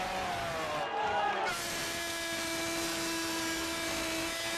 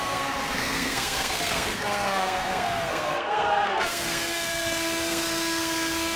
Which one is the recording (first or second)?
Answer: first